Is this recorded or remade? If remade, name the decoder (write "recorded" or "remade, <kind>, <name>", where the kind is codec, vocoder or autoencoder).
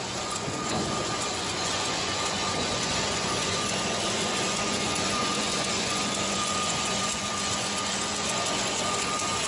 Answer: remade, vocoder, Vocos